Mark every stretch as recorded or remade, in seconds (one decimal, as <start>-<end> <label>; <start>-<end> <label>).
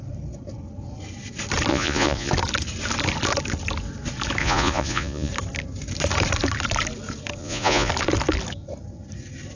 0.0-1.7 recorded; 1.7-2.3 remade; 2.3-4.4 recorded; 4.4-5.3 remade; 5.3-7.4 recorded; 7.4-7.9 remade; 7.9-9.6 recorded